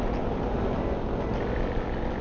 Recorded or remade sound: recorded